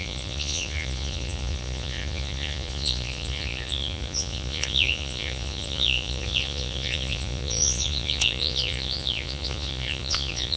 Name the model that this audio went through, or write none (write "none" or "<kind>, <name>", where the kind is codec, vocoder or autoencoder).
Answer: vocoder, Vocos